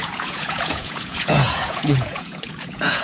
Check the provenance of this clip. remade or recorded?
remade